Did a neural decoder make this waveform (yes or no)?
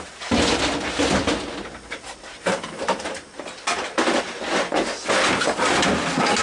no